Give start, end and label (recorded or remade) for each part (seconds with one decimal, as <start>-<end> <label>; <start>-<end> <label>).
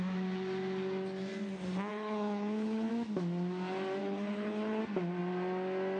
0.0-1.9 recorded; 1.9-2.9 remade; 2.9-4.0 recorded; 4.0-4.8 remade; 4.8-6.0 recorded